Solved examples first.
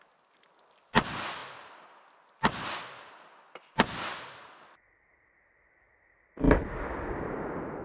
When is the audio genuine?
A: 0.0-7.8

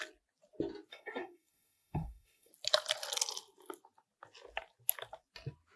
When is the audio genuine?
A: 0.0-0.9; 2.5-5.8

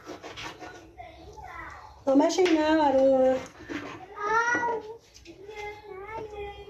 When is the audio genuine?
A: 0.0-3.2; 4.0-6.7

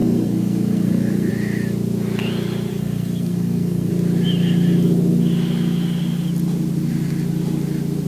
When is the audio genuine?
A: 1.3-2.7; 3.9-8.1